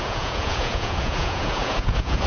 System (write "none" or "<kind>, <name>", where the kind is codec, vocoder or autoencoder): vocoder, Vocos